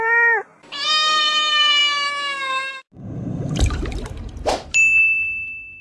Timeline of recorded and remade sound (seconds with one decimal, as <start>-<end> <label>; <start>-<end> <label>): 0.0-5.8 recorded